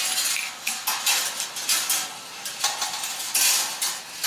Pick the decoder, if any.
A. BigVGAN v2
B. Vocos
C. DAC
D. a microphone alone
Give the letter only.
D